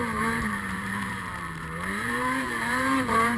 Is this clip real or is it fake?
fake